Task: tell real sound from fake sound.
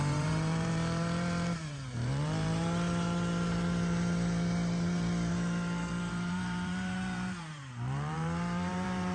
fake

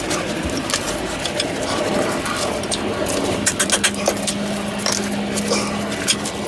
real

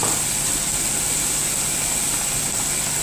real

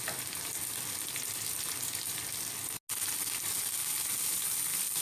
real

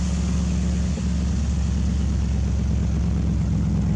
real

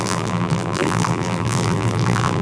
fake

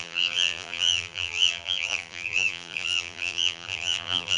fake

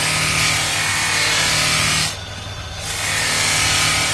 real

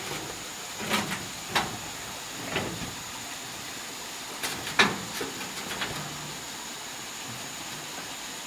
real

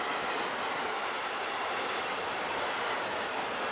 fake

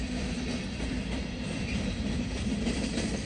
fake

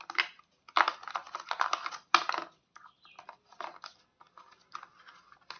real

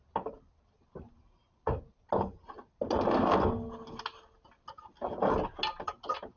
real